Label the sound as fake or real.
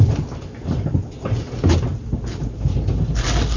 real